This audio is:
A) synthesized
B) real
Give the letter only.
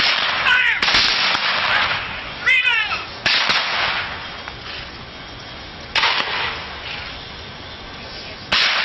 A